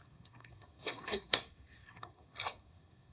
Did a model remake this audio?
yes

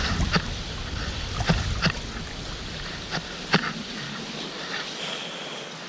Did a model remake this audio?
no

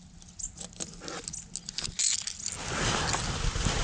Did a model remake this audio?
no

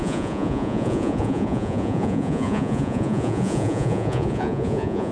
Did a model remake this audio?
yes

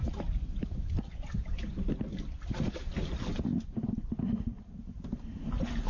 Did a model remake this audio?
no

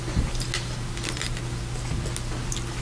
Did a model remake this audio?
no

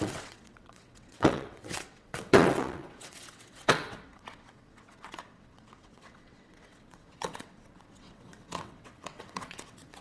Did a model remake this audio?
yes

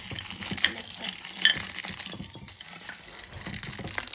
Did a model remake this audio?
no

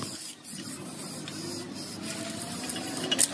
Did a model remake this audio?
no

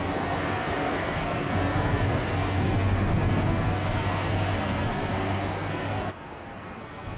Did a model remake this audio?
yes